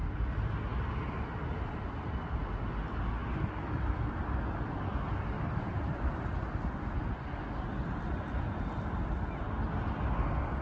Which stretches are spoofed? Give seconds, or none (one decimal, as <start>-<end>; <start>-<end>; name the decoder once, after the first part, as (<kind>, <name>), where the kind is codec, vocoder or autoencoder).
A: none